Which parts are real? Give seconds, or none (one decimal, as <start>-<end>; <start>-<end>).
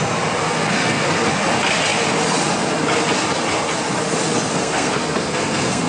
0.0-0.4; 1.3-4.5